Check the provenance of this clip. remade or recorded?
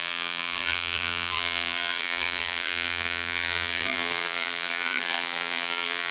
remade